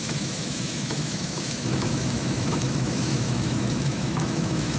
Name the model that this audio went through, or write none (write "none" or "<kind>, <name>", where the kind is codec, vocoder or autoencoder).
autoencoder, DAC-VAE